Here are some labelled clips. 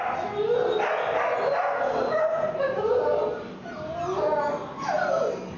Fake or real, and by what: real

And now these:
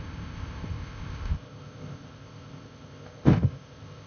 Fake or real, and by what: fake, codec, ZipCodec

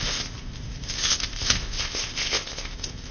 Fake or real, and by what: fake, codec, ZipCodec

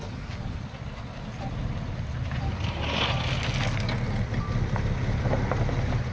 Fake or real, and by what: real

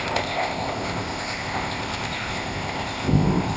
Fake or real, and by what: fake, codec, ZipCodec